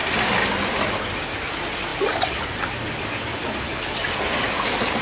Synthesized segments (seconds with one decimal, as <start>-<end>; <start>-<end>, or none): none